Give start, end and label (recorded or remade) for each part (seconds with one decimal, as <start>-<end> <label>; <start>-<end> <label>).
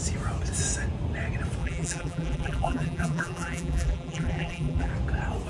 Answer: 0.0-1.6 recorded; 1.6-4.9 remade; 4.9-5.5 recorded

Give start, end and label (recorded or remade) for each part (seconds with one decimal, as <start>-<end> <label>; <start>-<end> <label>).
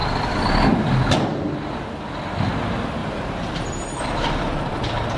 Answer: 0.0-3.0 recorded; 3.0-4.7 remade; 4.7-5.2 recorded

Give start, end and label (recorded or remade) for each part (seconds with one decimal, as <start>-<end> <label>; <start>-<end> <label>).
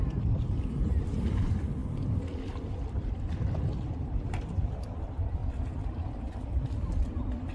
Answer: 0.0-5.4 remade; 5.4-6.3 recorded; 6.3-7.5 remade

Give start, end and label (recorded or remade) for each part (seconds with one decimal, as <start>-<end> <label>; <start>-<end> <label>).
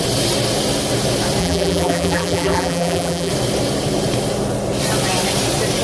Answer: 0.0-1.4 recorded; 1.4-3.3 remade; 3.3-5.8 recorded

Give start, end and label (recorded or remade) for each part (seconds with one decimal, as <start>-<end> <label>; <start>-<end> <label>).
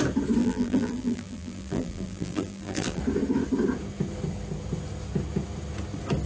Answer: 0.0-0.4 recorded; 0.4-3.0 remade; 3.0-6.3 recorded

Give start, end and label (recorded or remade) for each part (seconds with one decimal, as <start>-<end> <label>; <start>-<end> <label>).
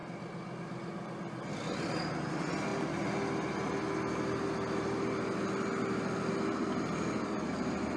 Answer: 0.0-8.0 recorded